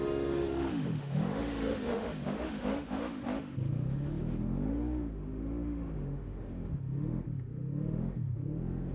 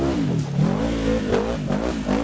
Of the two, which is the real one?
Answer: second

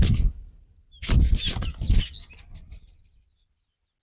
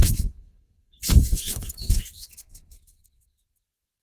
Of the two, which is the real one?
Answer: first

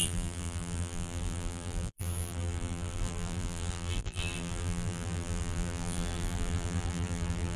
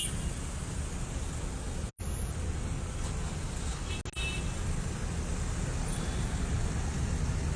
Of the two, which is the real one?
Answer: second